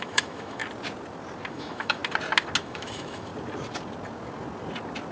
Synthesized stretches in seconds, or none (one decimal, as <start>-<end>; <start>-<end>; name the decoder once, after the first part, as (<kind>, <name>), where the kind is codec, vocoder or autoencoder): 0.0-0.6 (autoencoder, DAC-VAE); 1.5-2.0; 2.6-3.3